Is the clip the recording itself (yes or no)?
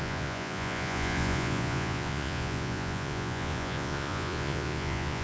no